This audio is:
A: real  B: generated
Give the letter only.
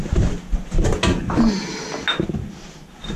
A